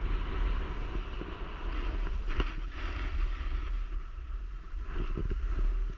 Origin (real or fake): real